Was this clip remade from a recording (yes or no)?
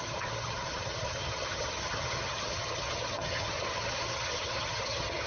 yes